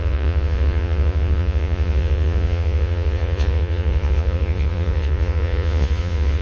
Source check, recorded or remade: remade